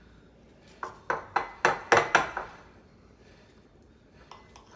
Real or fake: real